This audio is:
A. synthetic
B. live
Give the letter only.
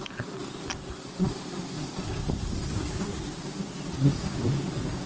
B